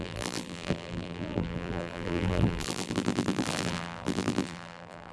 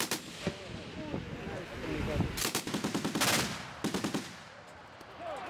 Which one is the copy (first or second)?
first